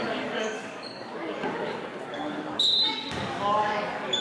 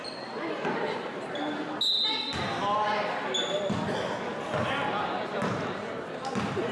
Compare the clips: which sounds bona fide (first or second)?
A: second